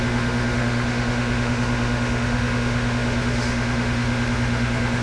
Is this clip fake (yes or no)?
yes